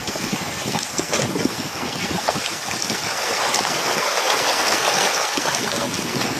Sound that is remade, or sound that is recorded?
remade